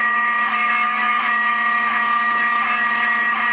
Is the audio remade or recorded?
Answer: remade